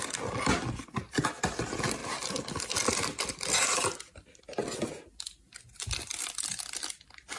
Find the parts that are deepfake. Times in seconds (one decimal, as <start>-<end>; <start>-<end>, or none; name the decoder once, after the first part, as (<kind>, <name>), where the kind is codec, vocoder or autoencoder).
none